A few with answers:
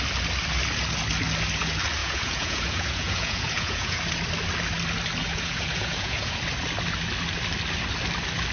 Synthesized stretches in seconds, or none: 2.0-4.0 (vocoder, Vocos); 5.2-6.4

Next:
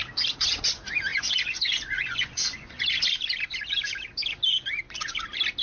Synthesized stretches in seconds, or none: 1.1-3.0 (vocoder, Vocos)

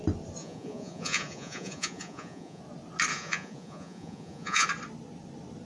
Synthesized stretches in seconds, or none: 0.4-2.6 (vocoder, Vocos); 3.1-4.7

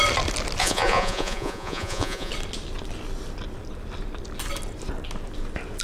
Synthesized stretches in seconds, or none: 0.6-2.3 (vocoder, Vocos)

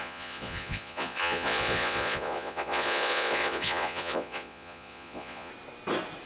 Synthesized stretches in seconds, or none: 0.0-5.5 (vocoder, Vocos)

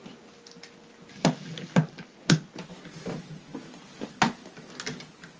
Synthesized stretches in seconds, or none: none

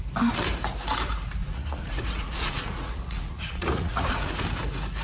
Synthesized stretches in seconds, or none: 1.4-4.3 (vocoder, Vocos)